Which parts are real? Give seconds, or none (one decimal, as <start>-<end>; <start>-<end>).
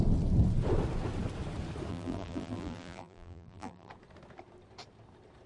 0.0-1.9; 3.9-5.5